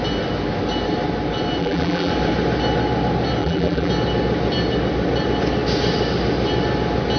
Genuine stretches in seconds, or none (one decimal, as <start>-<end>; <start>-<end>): 0.0-1.6; 2.1-3.4; 3.9-7.2